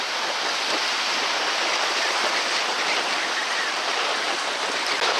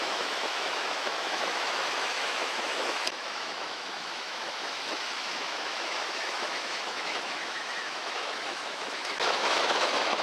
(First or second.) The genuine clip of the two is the first